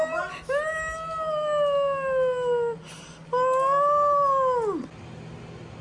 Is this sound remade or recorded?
recorded